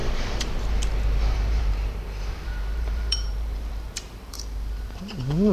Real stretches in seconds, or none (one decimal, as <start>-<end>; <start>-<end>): none